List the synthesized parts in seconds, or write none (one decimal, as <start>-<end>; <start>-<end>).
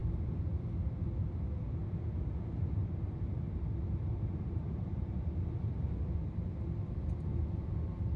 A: 2.8-7.3